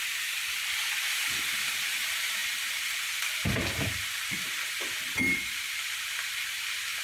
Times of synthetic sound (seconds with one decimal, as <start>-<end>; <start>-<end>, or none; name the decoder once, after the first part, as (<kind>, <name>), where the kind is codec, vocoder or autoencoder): 0.0-7.0 (vocoder, BigVGAN v2)